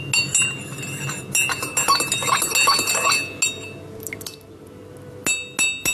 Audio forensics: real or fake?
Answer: real